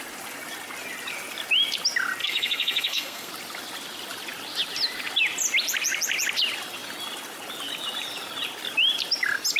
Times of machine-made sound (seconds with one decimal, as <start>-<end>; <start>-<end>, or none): 2.2-3.3